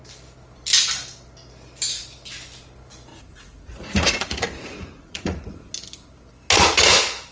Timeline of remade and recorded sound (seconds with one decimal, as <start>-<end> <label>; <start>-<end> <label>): 0.0-3.1 recorded; 3.1-5.7 remade; 5.7-7.3 recorded